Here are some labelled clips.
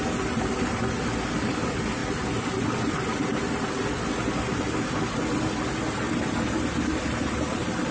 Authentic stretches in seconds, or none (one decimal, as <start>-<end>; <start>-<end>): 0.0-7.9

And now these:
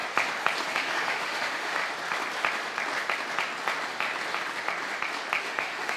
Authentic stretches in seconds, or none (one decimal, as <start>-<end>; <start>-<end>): 0.0-0.7; 1.8-5.4

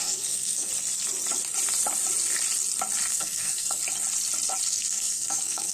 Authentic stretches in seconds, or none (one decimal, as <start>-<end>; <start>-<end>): 0.7-3.1; 3.8-4.7